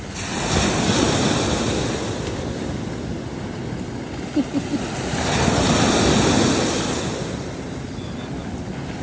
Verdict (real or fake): real